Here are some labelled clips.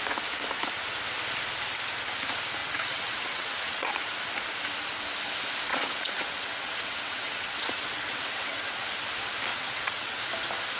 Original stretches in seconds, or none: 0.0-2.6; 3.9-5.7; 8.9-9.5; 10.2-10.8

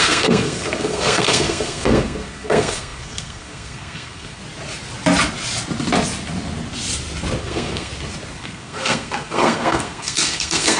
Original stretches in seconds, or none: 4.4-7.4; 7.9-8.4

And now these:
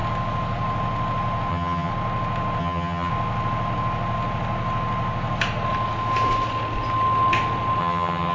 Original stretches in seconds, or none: 0.0-1.5; 1.9-2.6; 3.1-7.8

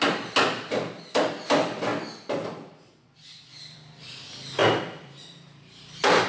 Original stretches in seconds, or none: 1.9-2.7